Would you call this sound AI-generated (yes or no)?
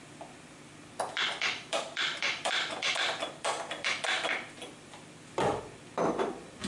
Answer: yes